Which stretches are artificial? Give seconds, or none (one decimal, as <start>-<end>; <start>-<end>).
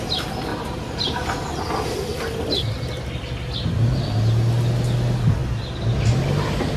0.5-1.6